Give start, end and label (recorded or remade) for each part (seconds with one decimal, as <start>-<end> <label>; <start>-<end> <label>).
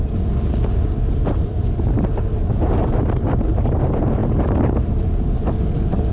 0.0-6.1 recorded